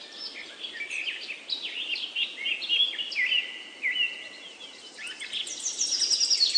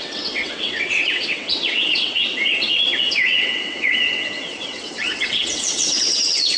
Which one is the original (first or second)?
first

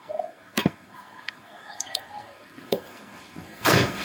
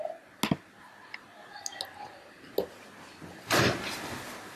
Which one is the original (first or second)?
second